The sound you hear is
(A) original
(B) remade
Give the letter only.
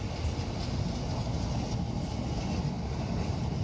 A